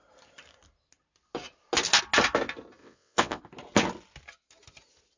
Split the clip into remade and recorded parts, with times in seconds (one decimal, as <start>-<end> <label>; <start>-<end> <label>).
0.0-2.8 recorded; 2.8-3.4 remade; 3.4-5.2 recorded